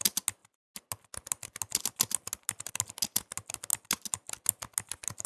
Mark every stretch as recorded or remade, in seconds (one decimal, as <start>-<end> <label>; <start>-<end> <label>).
0.0-5.3 recorded